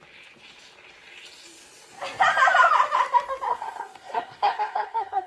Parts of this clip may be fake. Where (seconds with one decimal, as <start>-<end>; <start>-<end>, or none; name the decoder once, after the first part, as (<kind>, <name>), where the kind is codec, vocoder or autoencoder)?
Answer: 3.5-5.3 (codec, SNAC)